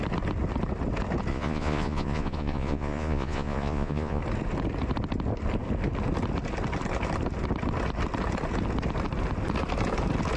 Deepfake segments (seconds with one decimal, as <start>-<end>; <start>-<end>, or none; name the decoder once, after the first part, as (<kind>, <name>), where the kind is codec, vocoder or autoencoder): 1.3-4.2 (vocoder, Vocos)